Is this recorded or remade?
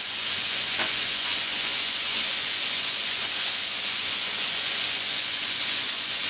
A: remade